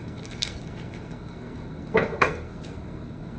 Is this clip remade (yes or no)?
yes